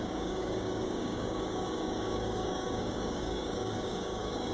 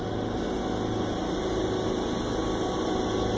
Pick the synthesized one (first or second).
first